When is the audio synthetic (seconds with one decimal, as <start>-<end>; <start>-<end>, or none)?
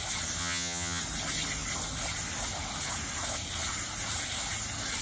0.4-1.0